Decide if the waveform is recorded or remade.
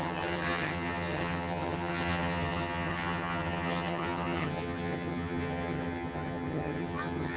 remade